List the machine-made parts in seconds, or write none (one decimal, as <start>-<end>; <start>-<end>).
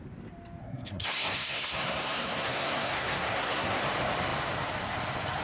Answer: 0.6-3.8